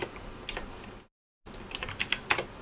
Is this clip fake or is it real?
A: real